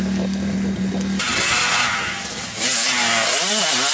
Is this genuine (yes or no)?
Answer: yes